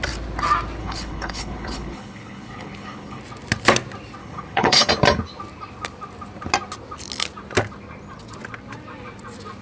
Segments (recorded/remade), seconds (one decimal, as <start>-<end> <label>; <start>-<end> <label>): 0.0-0.8 recorded; 0.8-3.2 remade; 3.2-4.2 recorded; 4.2-4.9 remade; 4.9-9.6 recorded